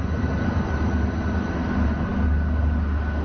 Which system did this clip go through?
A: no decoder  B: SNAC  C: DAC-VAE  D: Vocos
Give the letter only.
A